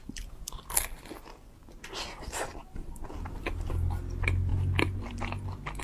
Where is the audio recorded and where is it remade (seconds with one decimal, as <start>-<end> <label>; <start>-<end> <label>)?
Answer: 0.0-5.8 recorded